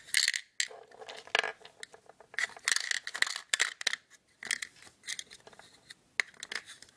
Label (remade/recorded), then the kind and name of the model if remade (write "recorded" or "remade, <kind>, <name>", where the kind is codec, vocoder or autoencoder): recorded